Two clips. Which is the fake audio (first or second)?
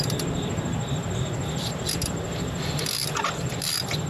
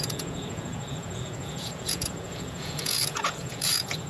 second